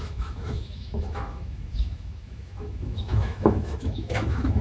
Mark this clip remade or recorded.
remade